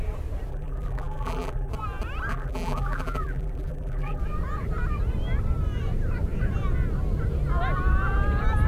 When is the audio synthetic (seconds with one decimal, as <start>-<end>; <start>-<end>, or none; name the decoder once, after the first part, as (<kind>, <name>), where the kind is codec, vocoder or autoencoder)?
0.5-1.7 (vocoder, BigVGAN v2); 2.3-4.2